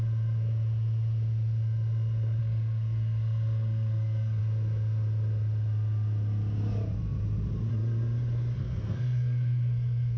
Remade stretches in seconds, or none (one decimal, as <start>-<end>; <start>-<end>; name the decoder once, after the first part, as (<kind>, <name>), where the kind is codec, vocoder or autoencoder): 2.4-4.4 (codec, SNAC); 8.6-10.2